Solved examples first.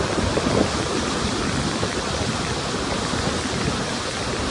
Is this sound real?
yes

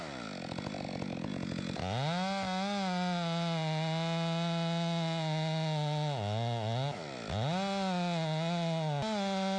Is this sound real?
yes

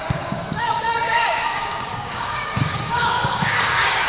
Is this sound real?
no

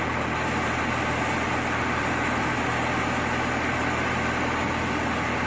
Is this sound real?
yes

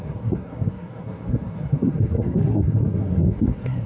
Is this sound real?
no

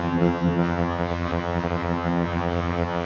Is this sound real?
no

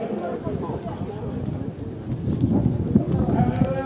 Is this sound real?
yes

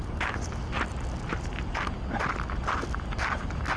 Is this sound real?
yes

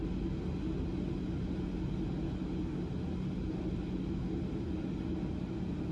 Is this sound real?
yes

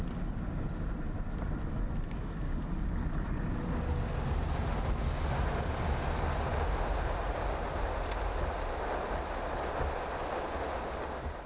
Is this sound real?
yes